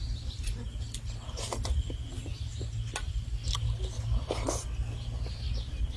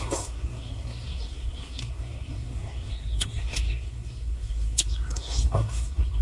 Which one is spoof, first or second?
second